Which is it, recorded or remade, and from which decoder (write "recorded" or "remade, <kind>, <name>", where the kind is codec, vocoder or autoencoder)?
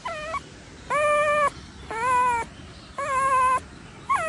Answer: recorded